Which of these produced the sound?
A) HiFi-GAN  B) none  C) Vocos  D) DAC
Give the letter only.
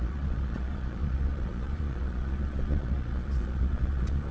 C